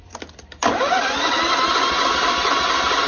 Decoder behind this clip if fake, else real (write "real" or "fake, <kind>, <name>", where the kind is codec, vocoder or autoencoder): real